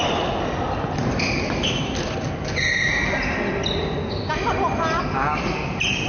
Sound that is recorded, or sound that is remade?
recorded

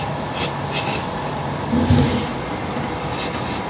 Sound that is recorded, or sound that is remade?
recorded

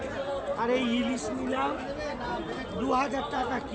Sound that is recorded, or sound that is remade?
recorded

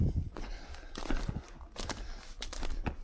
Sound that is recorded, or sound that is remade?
recorded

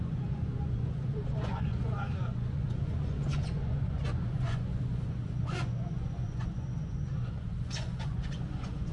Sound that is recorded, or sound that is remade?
remade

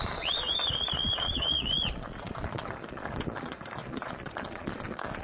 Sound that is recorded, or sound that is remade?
remade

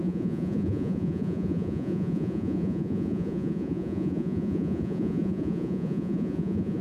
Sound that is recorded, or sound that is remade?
remade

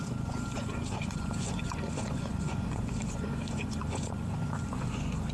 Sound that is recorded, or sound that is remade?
remade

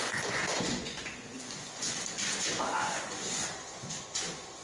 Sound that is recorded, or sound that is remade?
remade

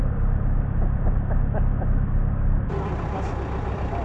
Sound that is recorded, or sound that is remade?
recorded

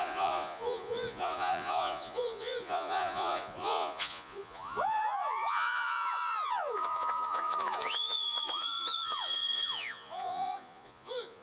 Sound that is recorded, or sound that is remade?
remade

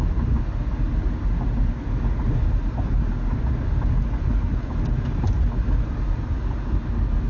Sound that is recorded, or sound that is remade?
recorded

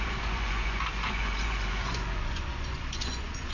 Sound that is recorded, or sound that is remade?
remade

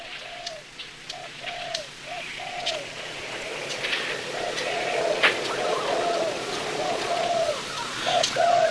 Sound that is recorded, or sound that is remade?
remade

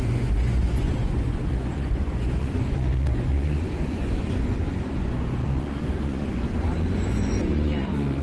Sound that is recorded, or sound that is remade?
remade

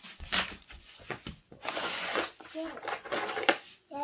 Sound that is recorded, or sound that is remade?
remade